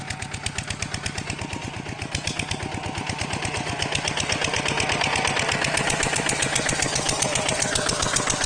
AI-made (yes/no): no